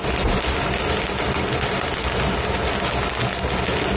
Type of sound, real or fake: real